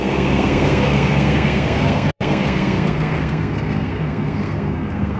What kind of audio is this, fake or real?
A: fake